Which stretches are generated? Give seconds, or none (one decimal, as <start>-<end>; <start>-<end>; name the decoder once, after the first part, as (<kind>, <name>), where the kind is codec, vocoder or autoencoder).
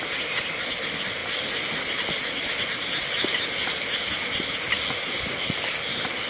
none